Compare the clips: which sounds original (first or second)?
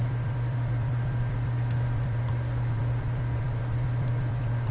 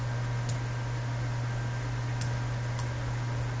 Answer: second